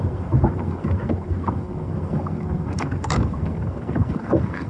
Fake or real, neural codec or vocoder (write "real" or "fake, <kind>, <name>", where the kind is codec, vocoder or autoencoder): fake, codec, SNAC